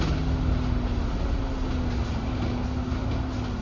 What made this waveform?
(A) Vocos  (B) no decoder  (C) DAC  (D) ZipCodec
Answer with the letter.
B